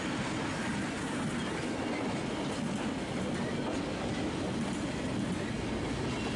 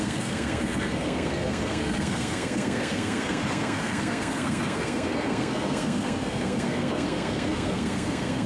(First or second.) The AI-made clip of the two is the second